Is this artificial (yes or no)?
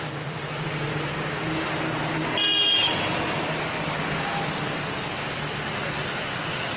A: no